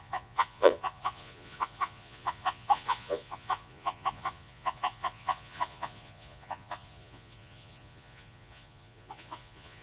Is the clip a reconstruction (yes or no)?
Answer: yes